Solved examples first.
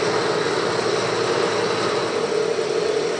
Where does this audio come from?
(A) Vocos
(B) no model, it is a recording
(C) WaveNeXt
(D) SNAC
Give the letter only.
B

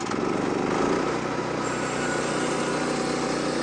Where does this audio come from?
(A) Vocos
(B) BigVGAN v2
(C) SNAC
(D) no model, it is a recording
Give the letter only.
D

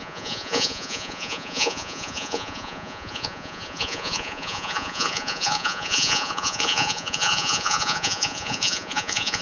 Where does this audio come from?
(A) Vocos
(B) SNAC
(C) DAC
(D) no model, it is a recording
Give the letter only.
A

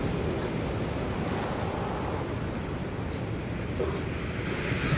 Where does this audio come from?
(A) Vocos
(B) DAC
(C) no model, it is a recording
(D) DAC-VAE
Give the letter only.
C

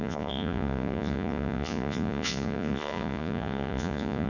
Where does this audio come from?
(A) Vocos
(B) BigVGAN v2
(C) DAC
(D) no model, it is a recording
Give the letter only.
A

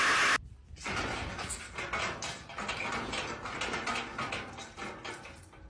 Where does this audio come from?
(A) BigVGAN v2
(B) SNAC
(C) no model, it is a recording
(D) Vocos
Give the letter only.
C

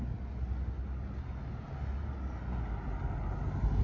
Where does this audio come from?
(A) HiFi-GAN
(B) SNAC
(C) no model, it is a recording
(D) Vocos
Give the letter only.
C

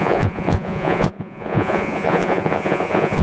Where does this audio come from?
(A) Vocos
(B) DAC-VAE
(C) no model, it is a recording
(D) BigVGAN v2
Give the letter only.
A